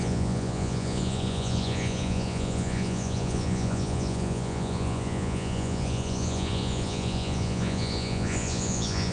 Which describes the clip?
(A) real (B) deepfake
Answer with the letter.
B